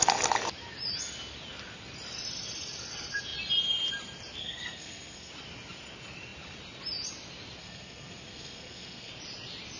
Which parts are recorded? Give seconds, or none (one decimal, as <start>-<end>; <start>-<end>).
0.0-4.4; 5.3-7.6; 9.1-9.8